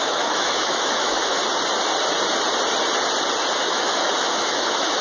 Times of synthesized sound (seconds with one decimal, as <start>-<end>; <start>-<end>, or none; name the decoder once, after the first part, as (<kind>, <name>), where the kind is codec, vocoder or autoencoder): 0.0-1.4 (autoencoder, DAC-VAE); 3.5-5.0